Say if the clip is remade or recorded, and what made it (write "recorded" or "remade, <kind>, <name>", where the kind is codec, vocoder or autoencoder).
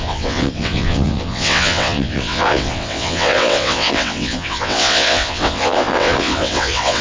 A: remade, vocoder, WaveNeXt